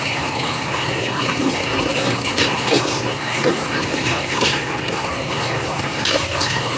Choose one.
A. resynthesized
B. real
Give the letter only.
A